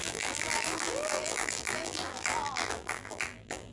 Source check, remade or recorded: remade